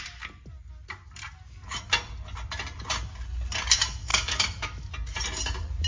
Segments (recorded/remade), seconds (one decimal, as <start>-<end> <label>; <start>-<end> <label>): 0.0-4.1 recorded; 4.1-4.9 remade; 4.9-5.9 recorded